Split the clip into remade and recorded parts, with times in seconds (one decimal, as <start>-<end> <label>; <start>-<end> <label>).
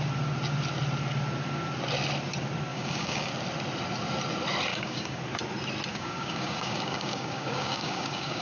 0.0-2.7 recorded; 2.7-3.3 remade; 3.3-4.7 recorded; 4.7-5.2 remade; 5.2-5.9 recorded; 5.9-8.4 remade